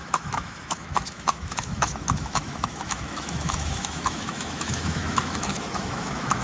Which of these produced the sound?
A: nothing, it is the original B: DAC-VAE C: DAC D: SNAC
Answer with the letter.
B